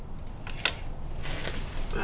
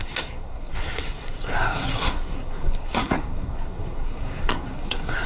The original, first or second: first